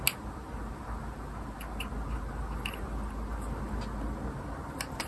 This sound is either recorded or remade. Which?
recorded